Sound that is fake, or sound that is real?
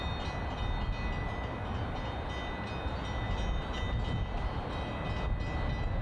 real